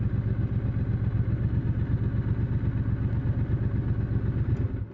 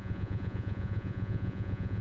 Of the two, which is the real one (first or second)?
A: first